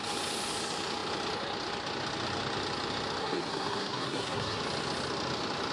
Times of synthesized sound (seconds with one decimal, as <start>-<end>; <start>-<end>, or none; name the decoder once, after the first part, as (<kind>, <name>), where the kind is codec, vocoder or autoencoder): 3.2-4.6 (codec, SNAC)